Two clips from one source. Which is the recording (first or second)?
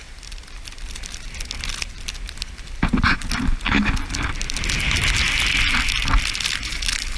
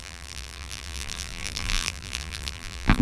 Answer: first